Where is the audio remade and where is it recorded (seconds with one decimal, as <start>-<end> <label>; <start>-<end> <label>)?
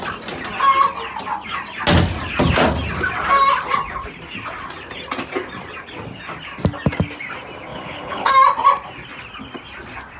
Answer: 0.0-7.7 recorded; 7.7-8.3 remade; 8.3-10.2 recorded